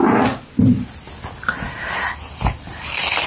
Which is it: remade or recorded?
recorded